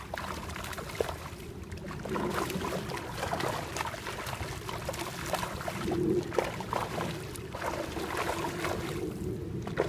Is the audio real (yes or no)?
yes